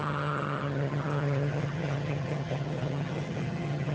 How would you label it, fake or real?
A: fake